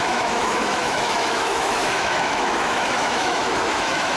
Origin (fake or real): fake